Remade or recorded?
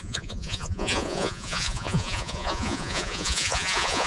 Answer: remade